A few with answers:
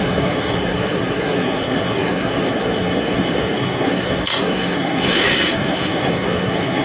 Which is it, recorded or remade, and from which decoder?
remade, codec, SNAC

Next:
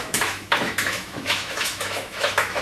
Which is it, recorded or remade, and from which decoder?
remade, autoencoder, DAC-VAE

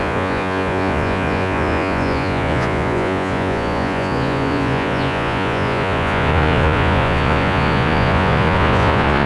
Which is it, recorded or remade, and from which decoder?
remade, vocoder, Vocos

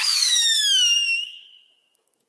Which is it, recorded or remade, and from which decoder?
remade, autoencoder, DAC-VAE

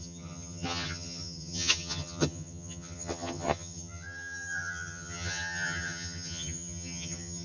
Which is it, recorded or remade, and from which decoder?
remade, vocoder, HiFi-GAN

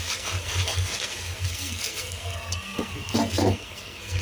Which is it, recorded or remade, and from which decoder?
remade, codec, SNAC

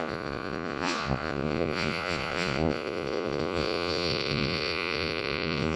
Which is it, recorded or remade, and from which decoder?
remade, vocoder, Vocos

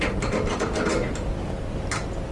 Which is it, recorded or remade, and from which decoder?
recorded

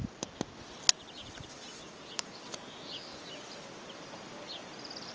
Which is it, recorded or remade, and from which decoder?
recorded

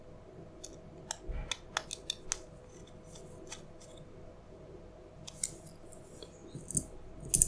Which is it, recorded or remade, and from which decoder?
recorded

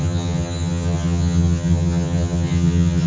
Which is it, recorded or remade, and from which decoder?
remade, vocoder, HiFi-GAN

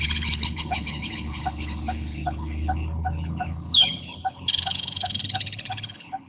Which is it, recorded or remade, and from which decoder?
remade, codec, HILCodec